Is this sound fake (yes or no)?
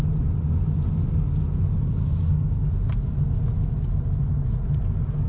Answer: no